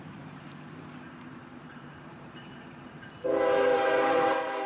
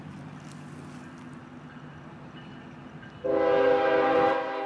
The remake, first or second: first